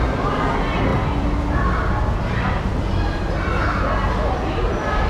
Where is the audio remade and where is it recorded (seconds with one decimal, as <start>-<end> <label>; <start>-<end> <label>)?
0.0-0.9 remade; 0.9-2.6 recorded; 2.6-3.6 remade; 3.6-4.3 recorded; 4.3-5.1 remade